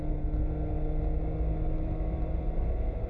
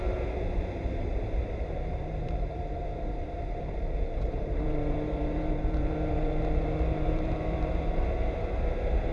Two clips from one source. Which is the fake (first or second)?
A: second